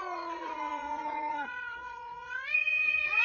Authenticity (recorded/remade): remade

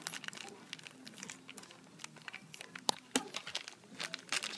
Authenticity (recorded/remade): recorded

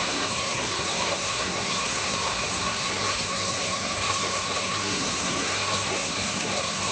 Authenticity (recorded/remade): remade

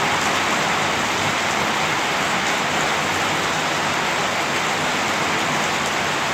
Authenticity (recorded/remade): recorded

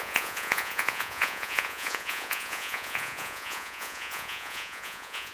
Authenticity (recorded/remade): remade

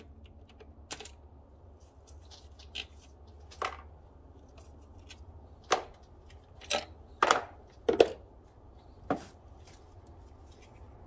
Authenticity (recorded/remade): recorded